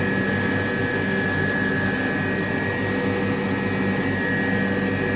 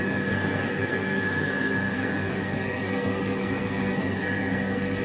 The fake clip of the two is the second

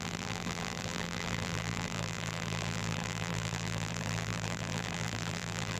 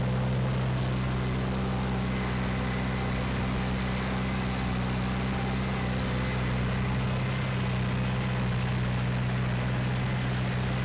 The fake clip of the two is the first